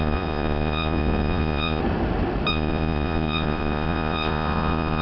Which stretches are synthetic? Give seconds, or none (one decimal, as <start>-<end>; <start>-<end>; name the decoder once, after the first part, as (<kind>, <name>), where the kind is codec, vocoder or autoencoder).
0.0-1.8 (vocoder, Vocos); 2.5-5.0